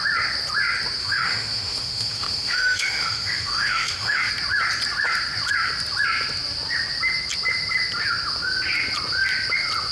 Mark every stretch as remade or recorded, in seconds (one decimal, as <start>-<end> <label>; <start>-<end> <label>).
0.0-1.0 recorded; 1.0-4.3 remade; 4.3-9.9 recorded